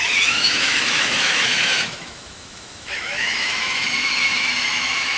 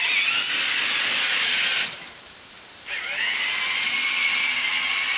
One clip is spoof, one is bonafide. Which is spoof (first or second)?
first